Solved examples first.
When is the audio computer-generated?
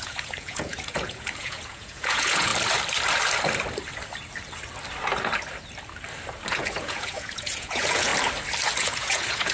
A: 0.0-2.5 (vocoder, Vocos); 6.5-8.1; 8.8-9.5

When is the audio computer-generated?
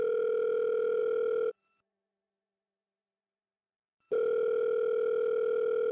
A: none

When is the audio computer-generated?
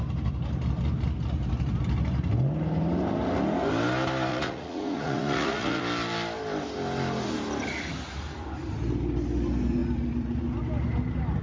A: 4.3-5.8 (vocoder, Vocos)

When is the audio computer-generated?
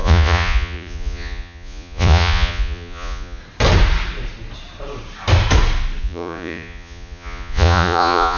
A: 0.0-3.4 (vocoder, Vocos); 6.0-8.4